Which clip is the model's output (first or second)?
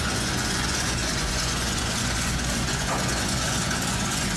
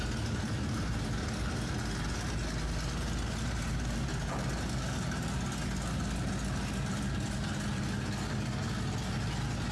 first